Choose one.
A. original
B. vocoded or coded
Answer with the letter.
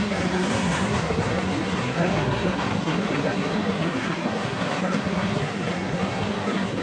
B